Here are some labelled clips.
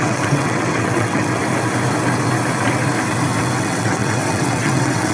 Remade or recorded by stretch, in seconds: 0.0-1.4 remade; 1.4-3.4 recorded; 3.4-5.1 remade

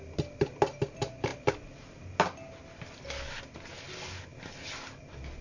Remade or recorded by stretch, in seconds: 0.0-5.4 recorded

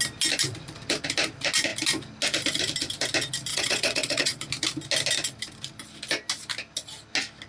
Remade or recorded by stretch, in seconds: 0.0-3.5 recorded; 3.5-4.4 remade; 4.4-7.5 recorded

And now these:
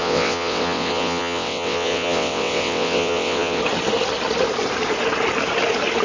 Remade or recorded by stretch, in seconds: 0.0-3.6 remade; 3.6-6.0 recorded

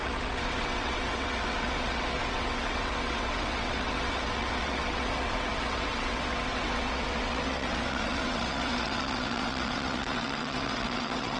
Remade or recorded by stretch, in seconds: 0.0-11.4 remade

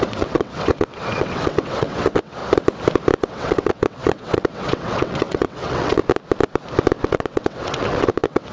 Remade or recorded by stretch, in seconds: 0.0-2.4 remade; 2.4-3.2 recorded; 3.2-6.0 remade; 6.0-7.0 recorded; 7.0-8.5 remade